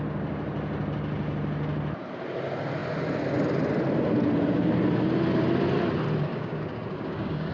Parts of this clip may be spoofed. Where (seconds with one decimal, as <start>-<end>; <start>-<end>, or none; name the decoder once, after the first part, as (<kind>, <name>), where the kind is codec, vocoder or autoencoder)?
6.3-7.5 (codec, DAC)

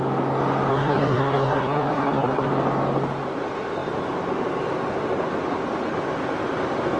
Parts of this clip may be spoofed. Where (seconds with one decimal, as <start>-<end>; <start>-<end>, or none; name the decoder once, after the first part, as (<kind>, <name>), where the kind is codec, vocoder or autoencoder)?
0.7-2.5 (codec, SNAC)

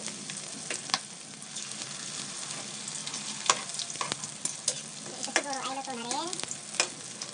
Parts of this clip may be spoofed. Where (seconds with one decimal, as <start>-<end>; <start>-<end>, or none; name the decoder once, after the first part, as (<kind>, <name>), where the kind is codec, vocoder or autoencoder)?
none

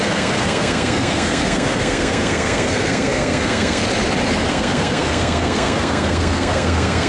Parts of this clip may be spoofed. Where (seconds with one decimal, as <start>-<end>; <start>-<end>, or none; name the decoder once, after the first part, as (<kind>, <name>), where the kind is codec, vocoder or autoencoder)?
0.0-3.8 (codec, SNAC); 4.5-7.1